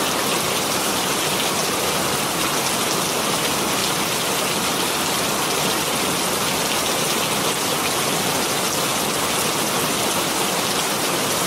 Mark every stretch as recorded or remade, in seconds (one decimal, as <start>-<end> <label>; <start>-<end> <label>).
0.0-11.5 recorded